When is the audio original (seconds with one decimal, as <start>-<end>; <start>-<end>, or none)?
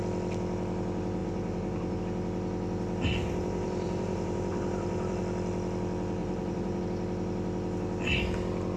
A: 0.0-1.2; 2.0-3.2; 5.2-6.2; 6.8-8.8